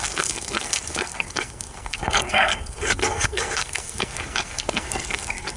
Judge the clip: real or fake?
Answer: fake